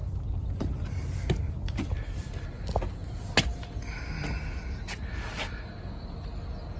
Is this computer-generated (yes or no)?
no